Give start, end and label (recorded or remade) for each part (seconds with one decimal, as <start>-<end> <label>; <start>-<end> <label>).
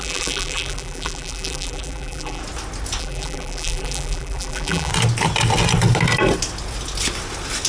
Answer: 0.0-2.4 remade; 2.4-3.0 recorded; 3.0-4.9 remade; 4.9-7.7 recorded